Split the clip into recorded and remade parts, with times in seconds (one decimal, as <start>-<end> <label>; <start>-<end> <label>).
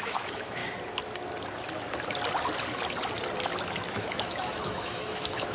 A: 0.0-0.6 remade; 0.6-3.9 recorded; 3.9-5.5 remade